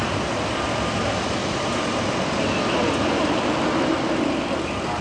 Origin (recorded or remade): remade